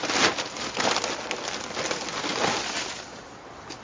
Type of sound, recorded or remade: recorded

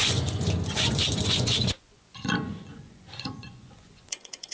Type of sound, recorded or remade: remade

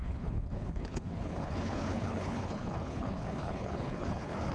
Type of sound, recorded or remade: remade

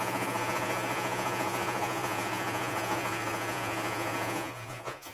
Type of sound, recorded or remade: remade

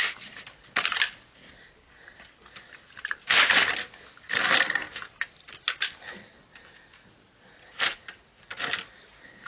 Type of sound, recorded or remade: recorded